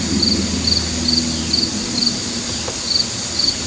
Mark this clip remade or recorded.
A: recorded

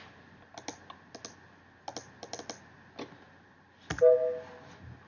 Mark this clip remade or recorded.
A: recorded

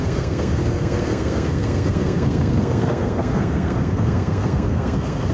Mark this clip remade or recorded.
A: remade